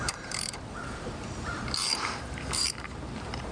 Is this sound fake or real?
fake